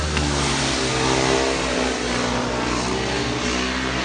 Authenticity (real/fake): real